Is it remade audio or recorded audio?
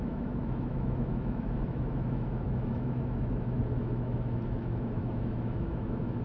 remade